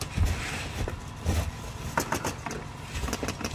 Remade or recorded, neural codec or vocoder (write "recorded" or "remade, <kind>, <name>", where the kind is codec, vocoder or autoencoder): recorded